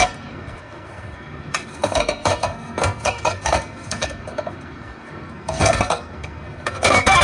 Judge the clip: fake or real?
fake